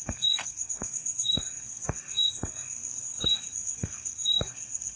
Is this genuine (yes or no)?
no